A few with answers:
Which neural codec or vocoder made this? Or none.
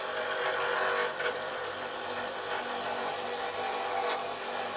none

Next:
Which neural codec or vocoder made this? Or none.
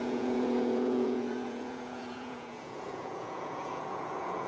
vocoder, Vocos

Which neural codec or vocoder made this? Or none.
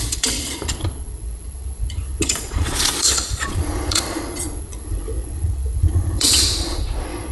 vocoder, Vocos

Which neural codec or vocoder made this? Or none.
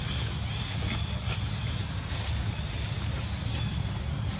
none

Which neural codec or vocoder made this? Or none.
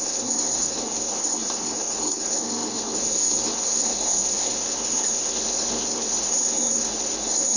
codec, SNAC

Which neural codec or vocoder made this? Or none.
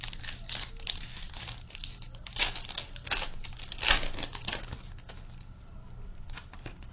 none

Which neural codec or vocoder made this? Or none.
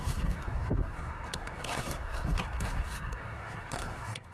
codec, SNAC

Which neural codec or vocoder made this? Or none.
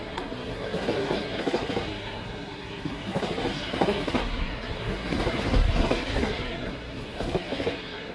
codec, SNAC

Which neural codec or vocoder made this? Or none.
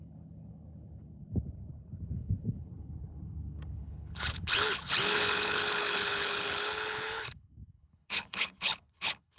codec, HILCodec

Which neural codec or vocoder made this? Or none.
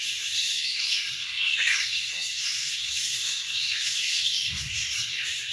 codec, SNAC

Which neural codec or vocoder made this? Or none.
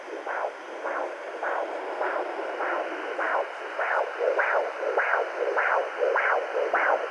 none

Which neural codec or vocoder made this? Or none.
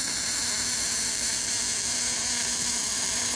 none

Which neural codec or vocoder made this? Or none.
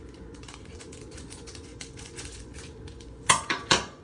vocoder, Vocos